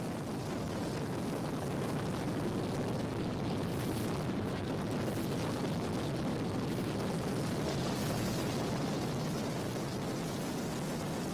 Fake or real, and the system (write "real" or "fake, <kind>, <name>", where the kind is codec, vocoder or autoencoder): real